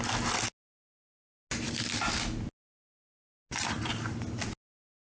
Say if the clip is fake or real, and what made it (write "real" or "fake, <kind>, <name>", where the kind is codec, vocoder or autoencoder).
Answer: real